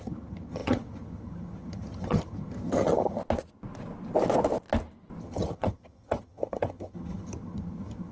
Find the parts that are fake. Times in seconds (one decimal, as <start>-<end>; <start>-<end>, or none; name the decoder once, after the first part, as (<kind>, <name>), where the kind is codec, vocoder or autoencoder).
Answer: 0.0-3.2 (vocoder, HiFi-GAN); 5.2-8.1